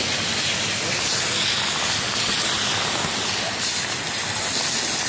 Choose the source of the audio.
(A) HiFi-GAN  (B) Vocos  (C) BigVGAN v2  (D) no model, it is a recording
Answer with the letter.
D